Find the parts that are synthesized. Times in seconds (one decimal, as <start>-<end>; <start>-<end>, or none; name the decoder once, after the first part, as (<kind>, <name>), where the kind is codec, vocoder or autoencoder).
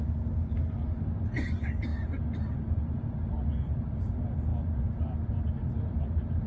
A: 1.9-3.0 (vocoder, BigVGAN v2)